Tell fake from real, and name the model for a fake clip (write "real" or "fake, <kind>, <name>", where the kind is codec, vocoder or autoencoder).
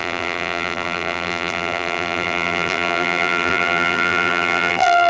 fake, vocoder, BigVGAN v2